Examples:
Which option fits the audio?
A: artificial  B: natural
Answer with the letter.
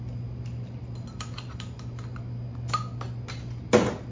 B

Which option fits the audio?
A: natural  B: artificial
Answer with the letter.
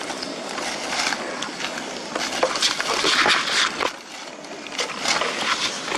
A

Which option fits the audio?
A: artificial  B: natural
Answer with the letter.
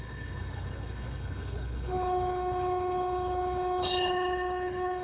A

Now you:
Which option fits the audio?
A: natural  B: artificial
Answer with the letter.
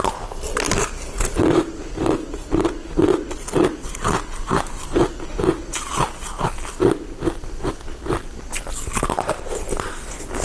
A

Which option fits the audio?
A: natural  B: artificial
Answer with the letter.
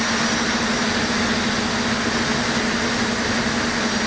A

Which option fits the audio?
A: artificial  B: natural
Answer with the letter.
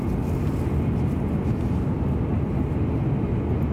B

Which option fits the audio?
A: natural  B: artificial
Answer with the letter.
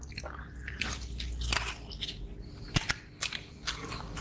A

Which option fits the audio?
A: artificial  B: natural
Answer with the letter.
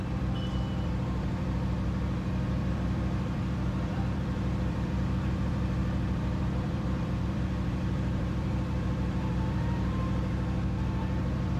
A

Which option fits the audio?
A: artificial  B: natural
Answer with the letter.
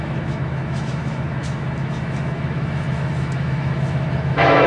A